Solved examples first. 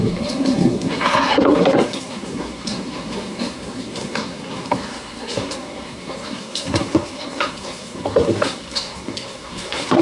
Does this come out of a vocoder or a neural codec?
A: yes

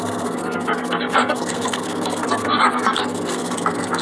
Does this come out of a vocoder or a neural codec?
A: yes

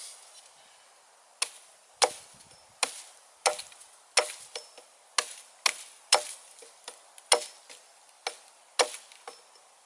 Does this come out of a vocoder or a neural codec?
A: no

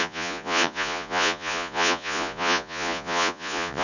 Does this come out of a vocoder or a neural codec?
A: yes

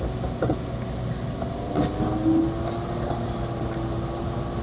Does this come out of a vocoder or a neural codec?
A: no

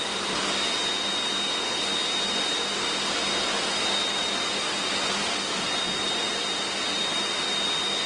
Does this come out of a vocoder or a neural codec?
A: no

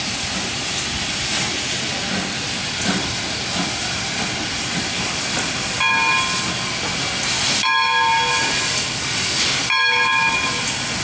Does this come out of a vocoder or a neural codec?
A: no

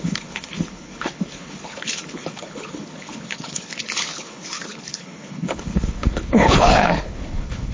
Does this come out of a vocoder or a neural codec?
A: yes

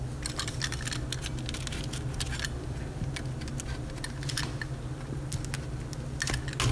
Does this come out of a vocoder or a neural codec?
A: no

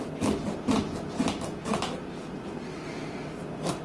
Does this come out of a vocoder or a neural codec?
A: no